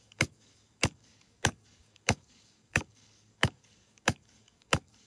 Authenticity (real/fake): fake